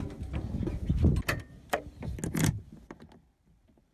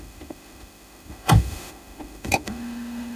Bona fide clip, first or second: first